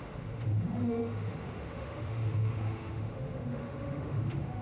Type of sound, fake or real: fake